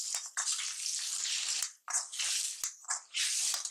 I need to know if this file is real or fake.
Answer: real